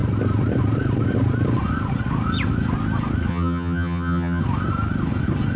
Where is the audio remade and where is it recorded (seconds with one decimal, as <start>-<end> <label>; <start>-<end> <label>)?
0.0-3.3 recorded; 3.3-4.4 remade; 4.4-5.6 recorded